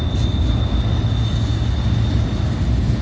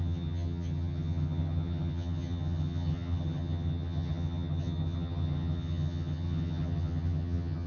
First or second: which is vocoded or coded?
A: second